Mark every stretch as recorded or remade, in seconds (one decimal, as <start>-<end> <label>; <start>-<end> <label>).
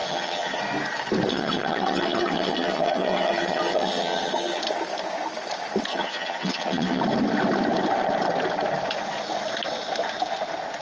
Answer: 0.0-0.6 remade; 0.6-1.3 recorded; 1.3-4.6 remade; 4.6-5.9 recorded; 5.9-7.0 remade; 7.0-10.8 recorded